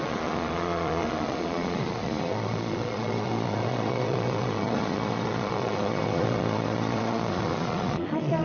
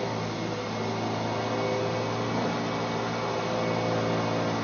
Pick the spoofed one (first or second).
first